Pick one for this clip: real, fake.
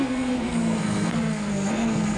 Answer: fake